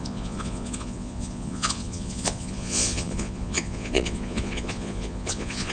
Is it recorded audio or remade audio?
remade